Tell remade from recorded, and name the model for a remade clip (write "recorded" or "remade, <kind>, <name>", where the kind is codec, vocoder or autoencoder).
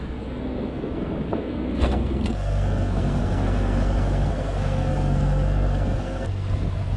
remade, codec, SNAC